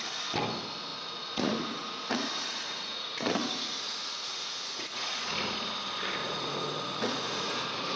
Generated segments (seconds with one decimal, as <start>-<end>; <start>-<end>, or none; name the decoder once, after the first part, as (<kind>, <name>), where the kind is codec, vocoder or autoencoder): 0.9-5.7 (vocoder, Vocos); 6.2-8.0